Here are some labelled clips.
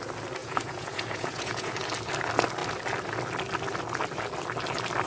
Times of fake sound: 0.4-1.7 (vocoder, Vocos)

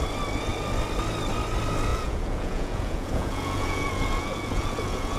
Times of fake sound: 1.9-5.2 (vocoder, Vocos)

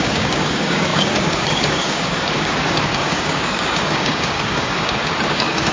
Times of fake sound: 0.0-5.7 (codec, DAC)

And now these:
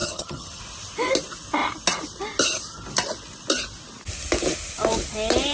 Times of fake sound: 0.0-0.6 (vocoder, HiFi-GAN)

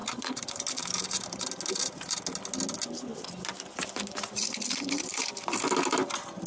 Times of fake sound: 0.0-1.4 (vocoder, BigVGAN v2); 3.1-5.3

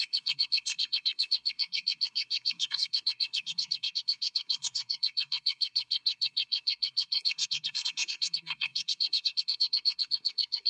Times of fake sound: 0.0-10.7 (codec, SNAC)

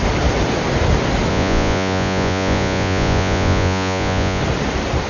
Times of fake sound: 1.3-4.4 (vocoder, Vocos)